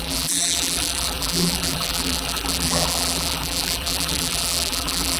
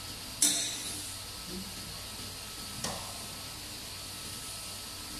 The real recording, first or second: second